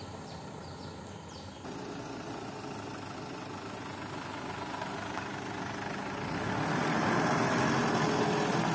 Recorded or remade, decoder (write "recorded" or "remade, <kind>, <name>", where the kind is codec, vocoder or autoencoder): recorded